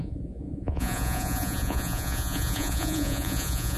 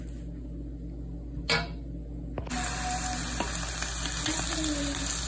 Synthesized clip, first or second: first